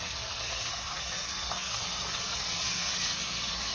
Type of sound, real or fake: fake